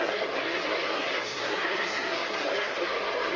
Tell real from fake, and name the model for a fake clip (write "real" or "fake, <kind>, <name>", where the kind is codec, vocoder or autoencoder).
fake, codec, SNAC